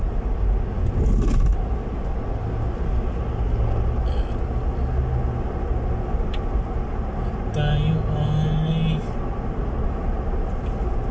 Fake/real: real